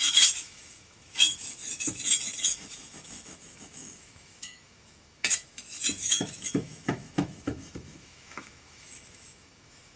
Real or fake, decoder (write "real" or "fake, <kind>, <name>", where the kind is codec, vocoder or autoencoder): fake, autoencoder, DAC-VAE